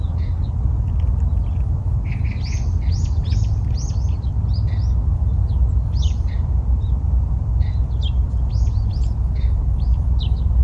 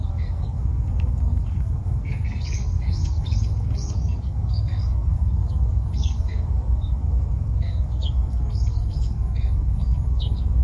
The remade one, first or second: second